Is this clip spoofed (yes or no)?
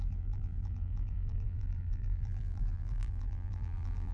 yes